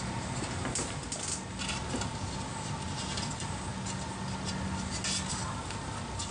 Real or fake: real